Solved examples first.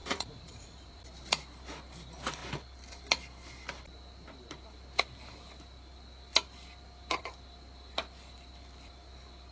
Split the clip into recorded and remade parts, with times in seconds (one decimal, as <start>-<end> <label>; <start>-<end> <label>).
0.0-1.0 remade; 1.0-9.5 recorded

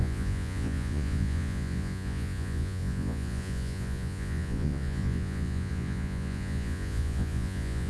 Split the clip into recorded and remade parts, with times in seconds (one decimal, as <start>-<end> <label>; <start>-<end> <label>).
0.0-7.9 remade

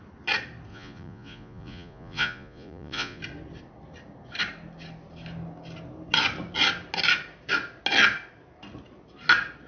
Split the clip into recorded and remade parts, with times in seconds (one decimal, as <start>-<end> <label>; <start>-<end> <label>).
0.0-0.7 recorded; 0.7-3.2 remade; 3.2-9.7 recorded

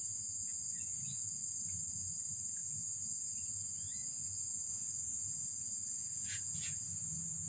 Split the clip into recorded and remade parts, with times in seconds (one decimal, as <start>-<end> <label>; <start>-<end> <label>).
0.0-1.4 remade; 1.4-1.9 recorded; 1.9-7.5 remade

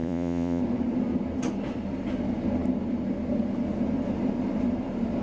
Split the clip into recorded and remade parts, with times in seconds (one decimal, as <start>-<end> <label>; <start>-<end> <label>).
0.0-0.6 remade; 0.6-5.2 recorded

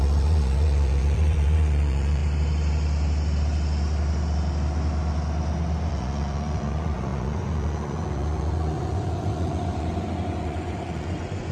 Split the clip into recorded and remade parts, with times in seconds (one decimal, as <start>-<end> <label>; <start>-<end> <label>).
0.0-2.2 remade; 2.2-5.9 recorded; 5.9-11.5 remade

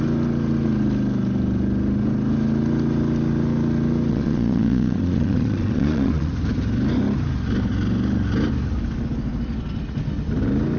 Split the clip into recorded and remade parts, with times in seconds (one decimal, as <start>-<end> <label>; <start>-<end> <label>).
0.0-4.1 recorded; 4.1-6.3 remade; 6.3-10.8 recorded

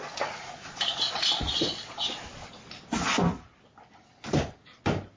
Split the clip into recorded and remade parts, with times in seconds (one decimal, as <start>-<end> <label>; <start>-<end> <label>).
0.0-2.1 remade; 2.1-5.2 recorded